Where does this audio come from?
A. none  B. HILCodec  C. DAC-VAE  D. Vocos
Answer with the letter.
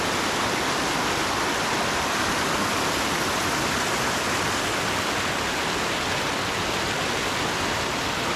A